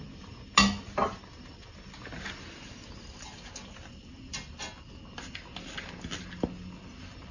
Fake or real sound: real